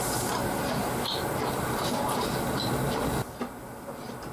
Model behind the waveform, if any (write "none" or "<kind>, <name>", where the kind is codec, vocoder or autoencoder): none